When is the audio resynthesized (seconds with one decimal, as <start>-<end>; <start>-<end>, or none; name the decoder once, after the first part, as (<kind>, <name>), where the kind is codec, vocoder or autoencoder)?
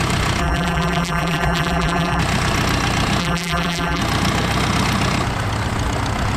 0.4-2.2 (vocoder, BigVGAN v2); 3.2-4.0